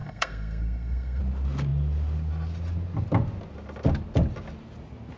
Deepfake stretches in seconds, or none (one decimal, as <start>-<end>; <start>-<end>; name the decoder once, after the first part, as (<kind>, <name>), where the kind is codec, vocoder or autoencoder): 0.0-1.2 (codec, SNAC)